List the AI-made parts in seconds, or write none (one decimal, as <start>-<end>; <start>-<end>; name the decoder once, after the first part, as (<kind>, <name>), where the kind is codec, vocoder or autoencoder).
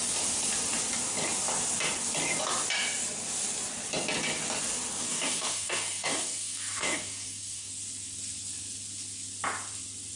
5.0-7.7 (codec, DAC)